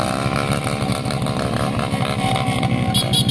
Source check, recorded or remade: recorded